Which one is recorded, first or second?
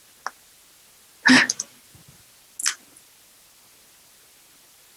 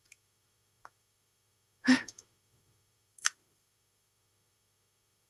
first